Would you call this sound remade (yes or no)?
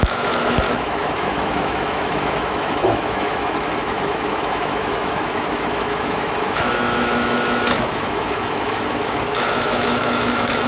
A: yes